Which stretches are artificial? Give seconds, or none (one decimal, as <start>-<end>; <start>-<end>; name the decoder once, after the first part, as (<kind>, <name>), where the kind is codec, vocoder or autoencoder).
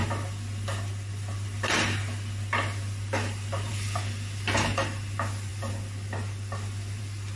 none